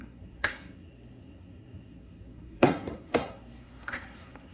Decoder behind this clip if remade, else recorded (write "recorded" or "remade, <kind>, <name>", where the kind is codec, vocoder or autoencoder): remade, codec, SNAC